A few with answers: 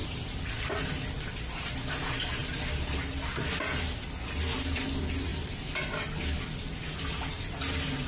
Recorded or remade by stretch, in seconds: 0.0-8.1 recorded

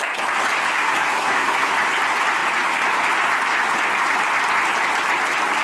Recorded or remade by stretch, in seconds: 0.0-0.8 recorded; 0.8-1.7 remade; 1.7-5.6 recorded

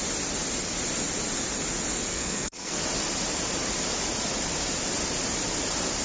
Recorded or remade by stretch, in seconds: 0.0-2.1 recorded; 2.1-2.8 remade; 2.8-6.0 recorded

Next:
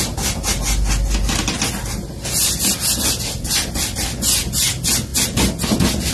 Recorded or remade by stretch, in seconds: 0.0-6.1 recorded

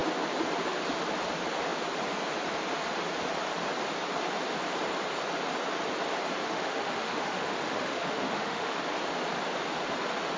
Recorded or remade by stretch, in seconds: 0.0-6.4 recorded; 6.4-8.7 remade; 8.7-10.4 recorded

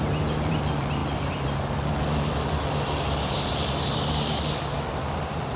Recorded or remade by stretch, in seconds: 0.0-5.6 recorded